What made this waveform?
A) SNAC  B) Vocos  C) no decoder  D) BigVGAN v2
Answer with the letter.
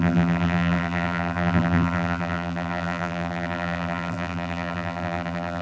D